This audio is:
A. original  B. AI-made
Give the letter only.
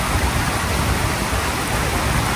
A